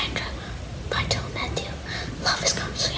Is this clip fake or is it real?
real